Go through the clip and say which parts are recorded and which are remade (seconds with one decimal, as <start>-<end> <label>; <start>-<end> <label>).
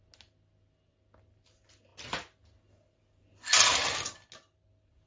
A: 0.0-5.1 recorded